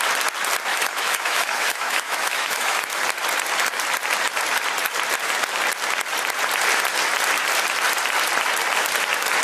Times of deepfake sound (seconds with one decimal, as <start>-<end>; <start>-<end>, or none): 0.7-3.0